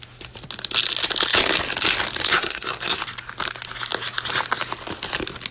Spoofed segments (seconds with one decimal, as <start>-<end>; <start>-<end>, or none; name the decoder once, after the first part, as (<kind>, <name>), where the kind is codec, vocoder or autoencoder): 2.3-3.0 (codec, SNAC)